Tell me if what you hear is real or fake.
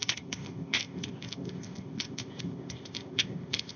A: fake